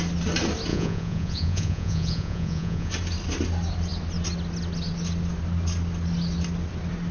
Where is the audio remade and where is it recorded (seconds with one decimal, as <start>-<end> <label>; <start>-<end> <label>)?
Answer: 0.0-0.7 recorded; 0.7-2.9 remade; 2.9-7.1 recorded

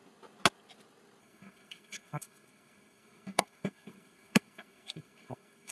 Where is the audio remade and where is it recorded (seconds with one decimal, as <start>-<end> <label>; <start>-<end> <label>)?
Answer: 0.0-1.2 recorded; 1.2-5.7 remade

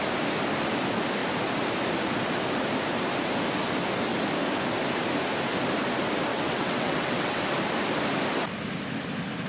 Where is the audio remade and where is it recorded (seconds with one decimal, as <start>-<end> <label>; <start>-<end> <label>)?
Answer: 0.0-6.3 recorded; 6.3-7.4 remade; 7.4-9.5 recorded

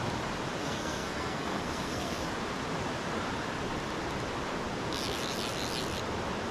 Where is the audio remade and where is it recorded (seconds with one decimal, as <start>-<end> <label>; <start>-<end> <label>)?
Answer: 0.0-0.6 recorded; 0.6-2.3 remade; 2.3-6.5 recorded

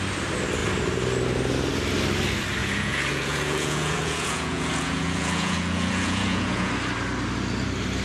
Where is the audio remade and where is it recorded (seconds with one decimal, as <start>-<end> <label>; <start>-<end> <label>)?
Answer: 0.0-2.6 recorded; 2.6-6.7 remade; 6.7-8.0 recorded

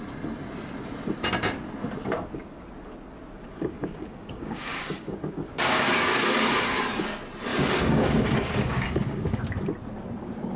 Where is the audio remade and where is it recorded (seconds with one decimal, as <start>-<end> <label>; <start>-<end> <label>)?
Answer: 0.0-3.4 recorded; 3.4-6.8 remade; 6.8-7.5 recorded; 7.5-9.4 remade; 9.4-10.6 recorded

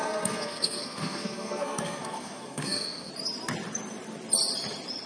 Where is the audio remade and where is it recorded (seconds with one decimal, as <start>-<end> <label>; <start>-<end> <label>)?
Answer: 0.0-3.1 remade; 3.1-5.1 recorded

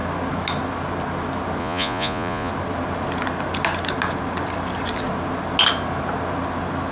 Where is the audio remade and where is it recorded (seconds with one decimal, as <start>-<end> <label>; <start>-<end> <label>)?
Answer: 0.0-1.6 recorded; 1.6-2.5 remade; 2.5-6.9 recorded